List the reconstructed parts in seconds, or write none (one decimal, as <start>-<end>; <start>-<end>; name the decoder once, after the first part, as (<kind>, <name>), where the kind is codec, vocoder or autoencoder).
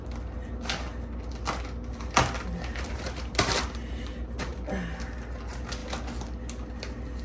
2.7-4.4 (vocoder, BigVGAN v2)